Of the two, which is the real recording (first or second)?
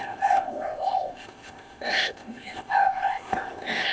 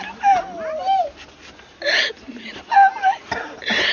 second